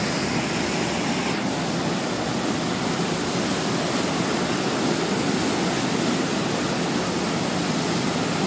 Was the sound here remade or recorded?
recorded